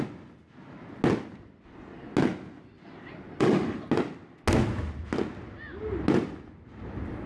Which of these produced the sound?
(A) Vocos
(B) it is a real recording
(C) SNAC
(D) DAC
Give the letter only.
B